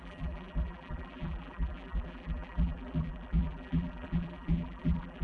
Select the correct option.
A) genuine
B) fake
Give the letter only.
B